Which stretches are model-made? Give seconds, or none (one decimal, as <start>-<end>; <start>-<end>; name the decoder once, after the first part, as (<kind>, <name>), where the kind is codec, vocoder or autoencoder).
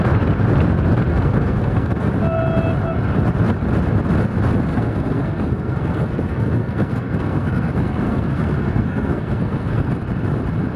1.1-2.1 (codec, SNAC); 4.7-9.9